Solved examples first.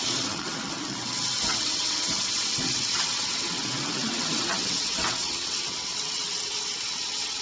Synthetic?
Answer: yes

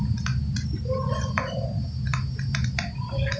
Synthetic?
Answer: no